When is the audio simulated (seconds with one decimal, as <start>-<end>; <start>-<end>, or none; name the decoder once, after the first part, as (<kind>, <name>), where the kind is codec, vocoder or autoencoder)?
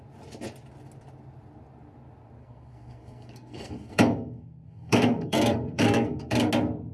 2.4-6.5 (codec, SNAC)